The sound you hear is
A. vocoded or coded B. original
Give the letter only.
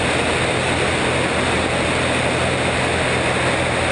B